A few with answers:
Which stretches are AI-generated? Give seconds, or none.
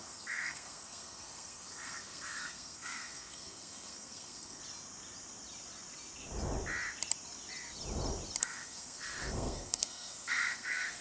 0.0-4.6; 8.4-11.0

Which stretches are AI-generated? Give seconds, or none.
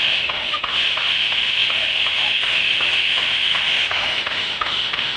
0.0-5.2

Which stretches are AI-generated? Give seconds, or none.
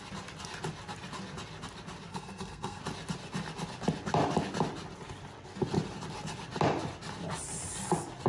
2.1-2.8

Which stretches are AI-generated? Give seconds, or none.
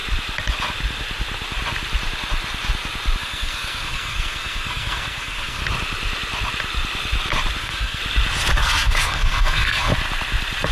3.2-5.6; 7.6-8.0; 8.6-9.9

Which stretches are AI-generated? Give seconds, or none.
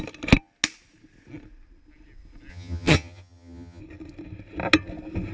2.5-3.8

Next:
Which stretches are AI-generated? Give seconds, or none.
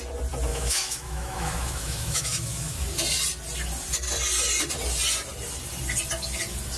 0.5-2.8